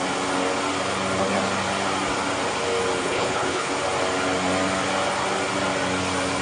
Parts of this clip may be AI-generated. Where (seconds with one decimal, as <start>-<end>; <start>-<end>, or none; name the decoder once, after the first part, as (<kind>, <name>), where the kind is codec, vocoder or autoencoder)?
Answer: 3.0-3.7 (codec, HILCodec)